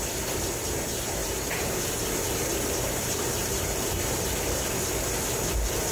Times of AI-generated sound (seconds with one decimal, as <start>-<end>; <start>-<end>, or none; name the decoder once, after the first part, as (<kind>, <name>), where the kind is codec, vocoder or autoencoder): 1.2-4.7 (vocoder, BigVGAN v2)